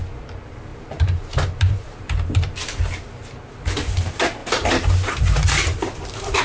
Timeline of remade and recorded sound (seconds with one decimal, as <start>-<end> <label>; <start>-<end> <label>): 0.0-0.7 recorded; 0.7-2.9 remade; 2.9-4.4 recorded; 4.4-6.4 remade